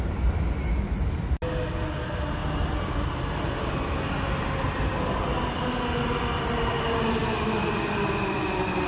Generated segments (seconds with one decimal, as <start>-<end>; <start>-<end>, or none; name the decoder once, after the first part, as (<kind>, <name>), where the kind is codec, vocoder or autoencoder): none